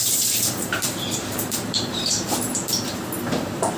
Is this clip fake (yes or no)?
yes